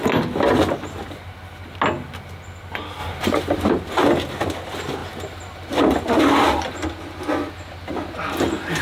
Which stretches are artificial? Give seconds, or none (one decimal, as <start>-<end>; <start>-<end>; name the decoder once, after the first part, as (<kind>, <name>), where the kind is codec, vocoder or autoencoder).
3.0-3.7 (vocoder, BigVGAN v2)